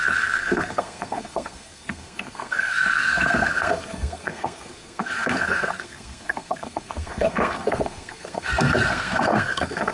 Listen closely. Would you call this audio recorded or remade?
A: remade